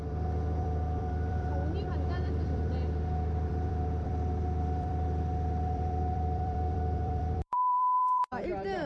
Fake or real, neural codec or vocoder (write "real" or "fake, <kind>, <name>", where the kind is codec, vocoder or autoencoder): fake, vocoder, BigVGAN v2